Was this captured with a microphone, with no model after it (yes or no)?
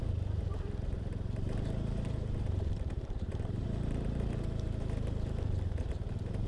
no